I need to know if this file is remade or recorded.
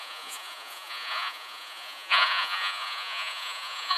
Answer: remade